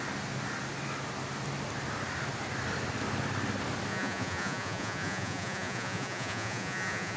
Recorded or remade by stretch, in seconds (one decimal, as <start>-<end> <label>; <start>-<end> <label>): 0.0-3.9 recorded; 3.9-7.2 remade